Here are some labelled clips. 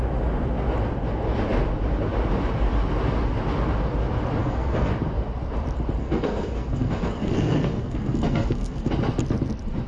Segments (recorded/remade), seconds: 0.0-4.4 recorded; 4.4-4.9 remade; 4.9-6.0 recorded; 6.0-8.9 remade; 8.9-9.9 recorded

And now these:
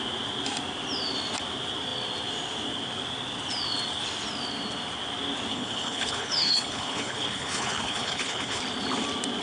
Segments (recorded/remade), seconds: 0.0-5.5 recorded; 5.5-8.6 remade; 8.6-9.4 recorded